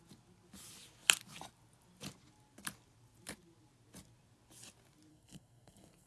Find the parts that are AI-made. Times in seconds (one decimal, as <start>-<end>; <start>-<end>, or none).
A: 5.1-6.1